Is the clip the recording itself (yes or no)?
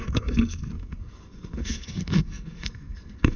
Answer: no